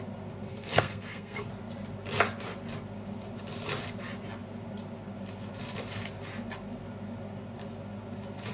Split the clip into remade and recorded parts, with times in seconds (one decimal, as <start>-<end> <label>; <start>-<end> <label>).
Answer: 0.0-0.5 recorded; 0.5-1.5 remade; 1.5-8.5 recorded